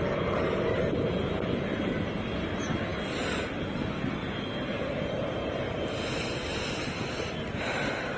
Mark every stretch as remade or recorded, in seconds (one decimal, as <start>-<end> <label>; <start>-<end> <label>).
0.0-8.2 recorded

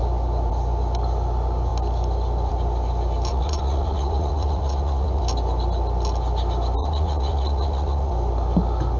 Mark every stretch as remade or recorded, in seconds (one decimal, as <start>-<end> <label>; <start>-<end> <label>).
0.0-3.3 recorded; 3.3-5.2 remade; 5.2-6.8 recorded; 6.8-8.1 remade; 8.1-9.0 recorded

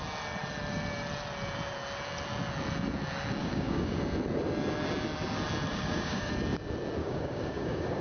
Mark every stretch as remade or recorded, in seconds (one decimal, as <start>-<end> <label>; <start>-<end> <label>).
0.0-3.4 recorded; 3.4-4.0 remade; 4.0-5.7 recorded; 5.7-6.3 remade; 6.3-7.0 recorded; 7.0-8.0 remade

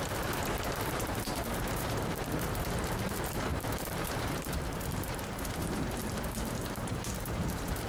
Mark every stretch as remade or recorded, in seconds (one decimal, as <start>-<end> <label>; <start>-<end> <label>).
0.0-7.9 remade